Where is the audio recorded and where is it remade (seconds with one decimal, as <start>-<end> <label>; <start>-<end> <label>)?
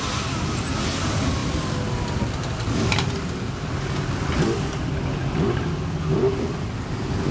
0.0-7.3 recorded